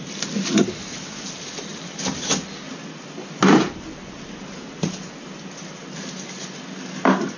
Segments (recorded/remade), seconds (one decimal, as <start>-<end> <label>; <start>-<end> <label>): 0.0-1.7 recorded; 1.7-2.3 remade; 2.3-7.4 recorded